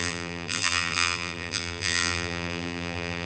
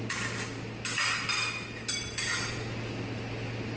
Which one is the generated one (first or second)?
first